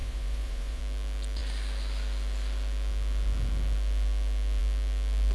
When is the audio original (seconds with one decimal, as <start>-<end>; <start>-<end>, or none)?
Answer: 0.8-5.3